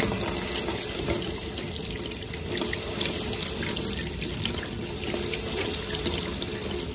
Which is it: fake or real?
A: real